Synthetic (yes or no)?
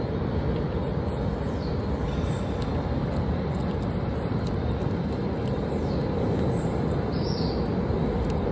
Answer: no